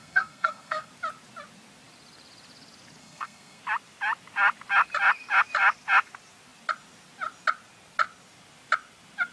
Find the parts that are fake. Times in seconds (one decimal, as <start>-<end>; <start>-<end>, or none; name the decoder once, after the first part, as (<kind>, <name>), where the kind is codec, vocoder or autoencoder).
0.0-0.9 (codec, SNAC); 3.0-3.6